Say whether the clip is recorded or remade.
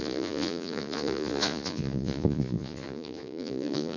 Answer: remade